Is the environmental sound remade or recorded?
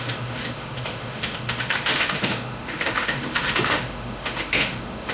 remade